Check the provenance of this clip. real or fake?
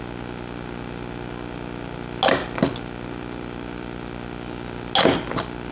real